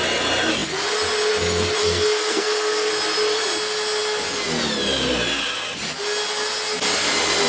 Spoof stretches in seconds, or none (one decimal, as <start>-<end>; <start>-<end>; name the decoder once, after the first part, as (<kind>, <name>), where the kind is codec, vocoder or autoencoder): 1.8-2.9 (codec, SNAC)